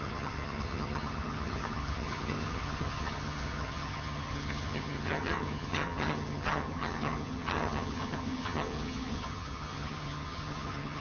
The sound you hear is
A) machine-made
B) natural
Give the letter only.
A